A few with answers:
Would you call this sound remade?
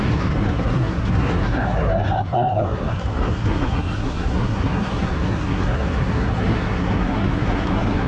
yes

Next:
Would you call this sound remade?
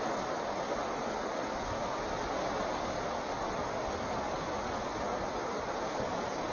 no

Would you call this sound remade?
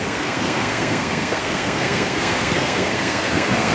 yes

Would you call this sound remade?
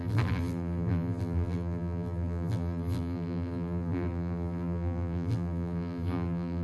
yes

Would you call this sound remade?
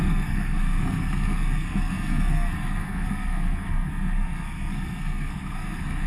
yes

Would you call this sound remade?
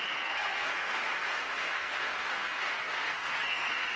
yes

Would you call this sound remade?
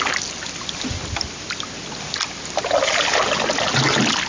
no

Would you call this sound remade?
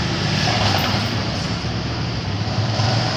yes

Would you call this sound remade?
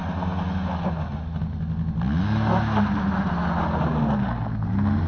no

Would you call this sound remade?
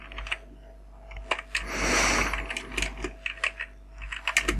no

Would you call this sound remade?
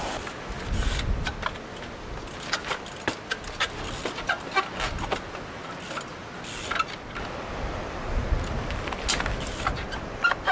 no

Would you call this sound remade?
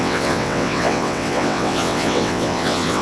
yes